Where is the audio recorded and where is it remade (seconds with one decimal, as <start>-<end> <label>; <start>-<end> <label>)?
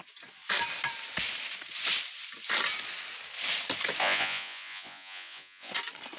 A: 0.0-4.0 recorded; 4.0-5.7 remade; 5.7-6.2 recorded